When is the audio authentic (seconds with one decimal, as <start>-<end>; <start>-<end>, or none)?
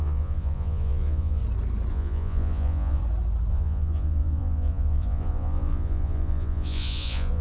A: 1.4-1.9; 3.0-3.5